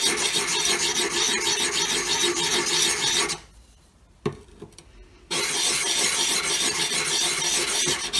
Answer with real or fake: real